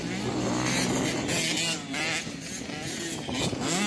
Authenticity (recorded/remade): recorded